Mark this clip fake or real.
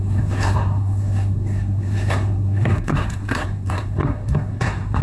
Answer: fake